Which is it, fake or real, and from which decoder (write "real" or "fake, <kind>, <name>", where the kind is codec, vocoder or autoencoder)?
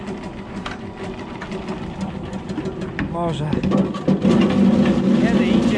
real